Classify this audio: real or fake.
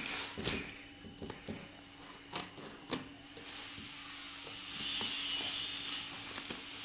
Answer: real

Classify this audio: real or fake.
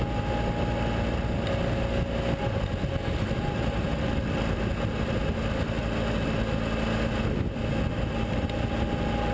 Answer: real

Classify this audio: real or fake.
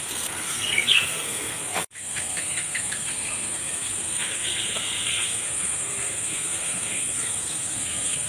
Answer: fake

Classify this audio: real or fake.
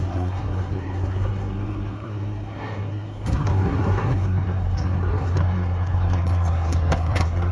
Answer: fake